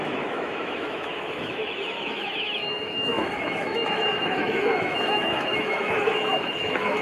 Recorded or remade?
remade